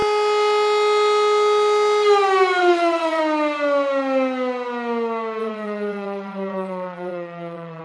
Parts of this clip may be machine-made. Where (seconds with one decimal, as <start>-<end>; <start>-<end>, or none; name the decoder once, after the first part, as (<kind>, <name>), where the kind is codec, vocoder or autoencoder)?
2.6-3.2 (vocoder, WaveNeXt); 5.4-7.8